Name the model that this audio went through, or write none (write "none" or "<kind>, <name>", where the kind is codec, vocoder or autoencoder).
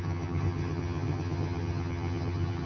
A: vocoder, HiFi-GAN